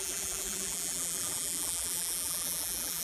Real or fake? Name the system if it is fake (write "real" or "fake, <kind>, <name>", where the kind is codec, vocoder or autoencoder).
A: fake, vocoder, BigVGAN v2